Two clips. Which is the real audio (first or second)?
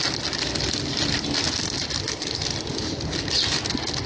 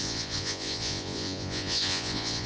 first